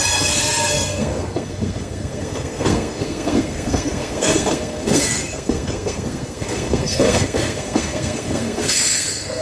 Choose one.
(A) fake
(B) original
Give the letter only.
A